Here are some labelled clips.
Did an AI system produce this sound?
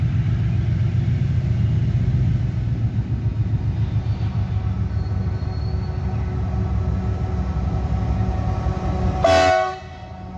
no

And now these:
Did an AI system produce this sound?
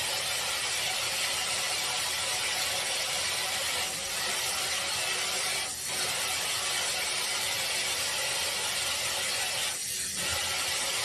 no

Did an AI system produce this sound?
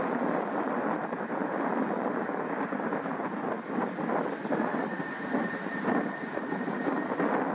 no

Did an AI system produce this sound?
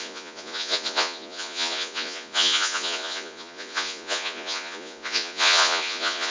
yes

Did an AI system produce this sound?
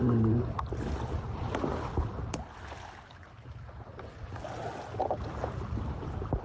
no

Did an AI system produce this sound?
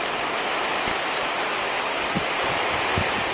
no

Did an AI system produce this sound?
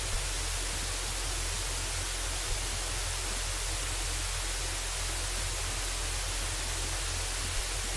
no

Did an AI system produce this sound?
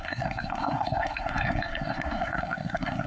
yes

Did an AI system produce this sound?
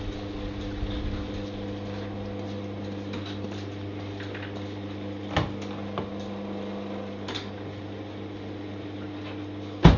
no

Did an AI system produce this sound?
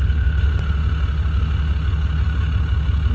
no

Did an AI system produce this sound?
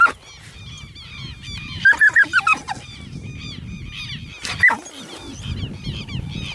no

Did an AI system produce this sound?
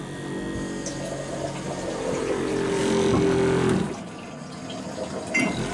no